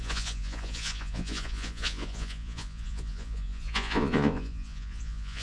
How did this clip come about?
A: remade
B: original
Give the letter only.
A